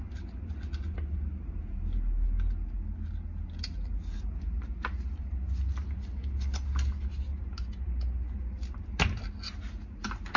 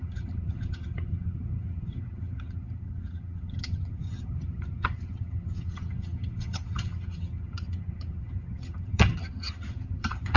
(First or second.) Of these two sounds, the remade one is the second